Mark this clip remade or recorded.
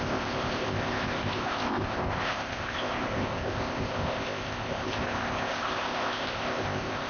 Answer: remade